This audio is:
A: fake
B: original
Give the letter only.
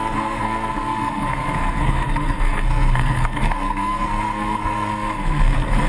A